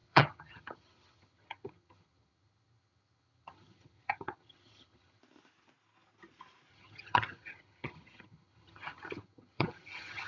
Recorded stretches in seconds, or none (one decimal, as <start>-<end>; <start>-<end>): 5.2-6.7